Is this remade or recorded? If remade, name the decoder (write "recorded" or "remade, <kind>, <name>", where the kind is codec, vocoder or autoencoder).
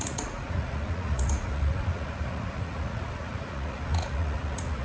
remade, vocoder, Vocos